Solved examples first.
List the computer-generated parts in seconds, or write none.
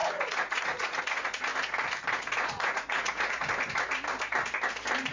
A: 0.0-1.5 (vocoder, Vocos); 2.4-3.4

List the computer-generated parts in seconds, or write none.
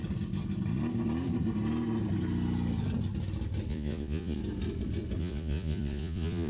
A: 3.7-4.4 (vocoder, Vocos); 5.2-6.5